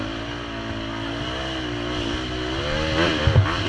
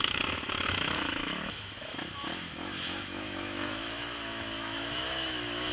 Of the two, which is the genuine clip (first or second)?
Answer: first